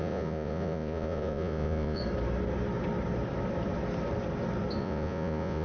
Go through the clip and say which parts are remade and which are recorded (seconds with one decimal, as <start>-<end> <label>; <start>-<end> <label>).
0.0-2.0 remade; 2.0-4.8 recorded; 4.8-5.6 remade